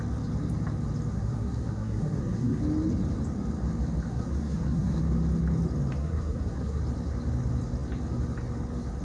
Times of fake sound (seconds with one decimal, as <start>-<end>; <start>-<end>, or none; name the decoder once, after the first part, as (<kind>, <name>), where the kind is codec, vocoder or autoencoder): 1.1-2.6 (codec, SNAC); 4.1-5.0; 6.0-6.8